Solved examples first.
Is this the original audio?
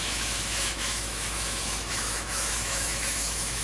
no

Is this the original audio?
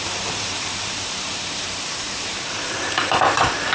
no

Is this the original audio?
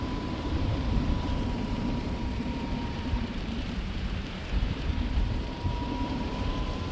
no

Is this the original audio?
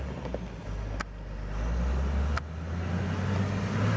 yes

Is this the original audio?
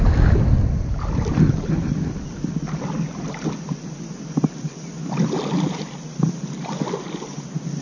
yes